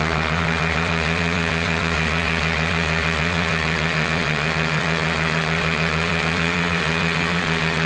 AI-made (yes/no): yes